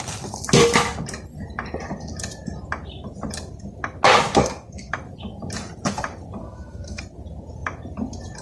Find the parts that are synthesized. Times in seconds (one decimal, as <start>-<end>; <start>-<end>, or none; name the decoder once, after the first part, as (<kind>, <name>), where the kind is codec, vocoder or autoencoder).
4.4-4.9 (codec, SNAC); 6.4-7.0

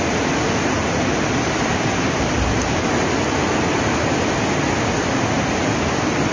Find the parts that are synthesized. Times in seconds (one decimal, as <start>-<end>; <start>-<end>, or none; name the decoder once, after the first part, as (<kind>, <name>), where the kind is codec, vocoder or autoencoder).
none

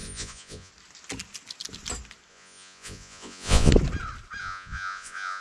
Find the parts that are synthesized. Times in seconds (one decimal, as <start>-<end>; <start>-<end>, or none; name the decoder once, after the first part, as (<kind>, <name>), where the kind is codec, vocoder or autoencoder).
0.0-0.7 (vocoder, Vocos); 2.3-3.7; 4.4-5.4

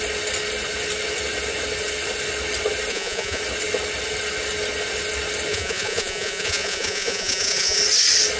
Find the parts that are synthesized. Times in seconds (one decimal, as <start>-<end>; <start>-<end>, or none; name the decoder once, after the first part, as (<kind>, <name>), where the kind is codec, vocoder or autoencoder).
2.9-3.4 (vocoder, Vocos); 5.5-7.8